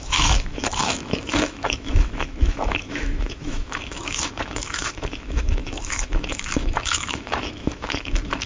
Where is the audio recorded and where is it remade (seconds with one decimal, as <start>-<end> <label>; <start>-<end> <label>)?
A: 0.0-8.5 remade